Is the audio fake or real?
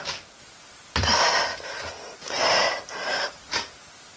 real